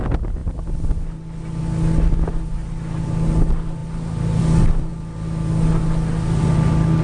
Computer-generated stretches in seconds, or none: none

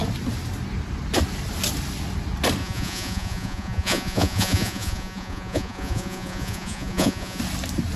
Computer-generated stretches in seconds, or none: 2.6-7.4 (vocoder, Vocos)

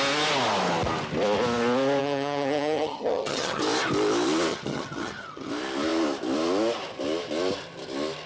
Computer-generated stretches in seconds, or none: 2.0-3.6 (vocoder, HiFi-GAN); 4.5-5.5

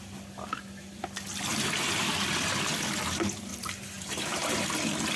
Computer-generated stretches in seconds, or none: 1.5-2.1 (vocoder, BigVGAN v2); 3.5-4.7

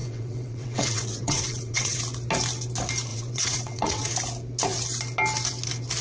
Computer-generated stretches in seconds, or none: 0.0-2.0 (vocoder, WaveNeXt); 3.1-4.1

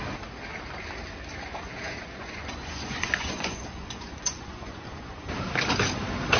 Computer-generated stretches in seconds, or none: 1.5-5.3 (vocoder, Vocos)

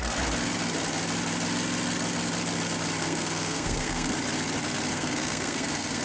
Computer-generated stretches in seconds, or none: 3.0-4.1 (codec, SNAC); 4.9-6.0